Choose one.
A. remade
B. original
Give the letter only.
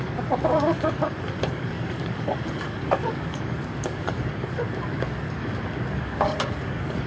A